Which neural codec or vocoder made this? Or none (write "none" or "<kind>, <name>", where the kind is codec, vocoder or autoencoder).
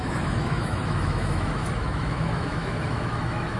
autoencoder, DAC-VAE